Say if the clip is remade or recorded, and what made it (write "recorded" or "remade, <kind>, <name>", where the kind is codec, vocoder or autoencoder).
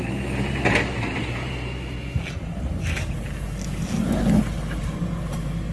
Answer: recorded